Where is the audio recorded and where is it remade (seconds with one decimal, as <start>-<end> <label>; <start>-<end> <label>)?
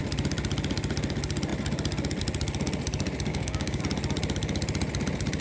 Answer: 0.0-3.3 recorded; 3.3-3.8 remade; 3.8-5.4 recorded